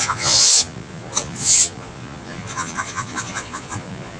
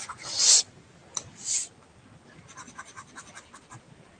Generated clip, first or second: first